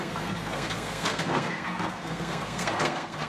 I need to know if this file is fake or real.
fake